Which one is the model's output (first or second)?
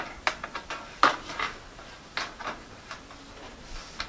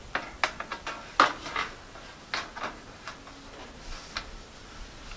first